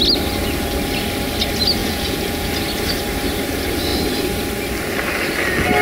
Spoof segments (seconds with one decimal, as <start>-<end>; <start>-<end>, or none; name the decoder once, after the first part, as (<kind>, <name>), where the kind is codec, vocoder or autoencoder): 1.8-2.5 (vocoder, Vocos)